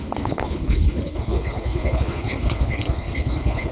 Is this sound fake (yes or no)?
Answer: yes